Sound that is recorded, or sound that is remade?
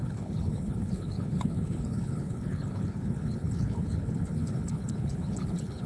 remade